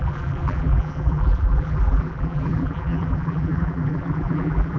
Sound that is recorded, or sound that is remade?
remade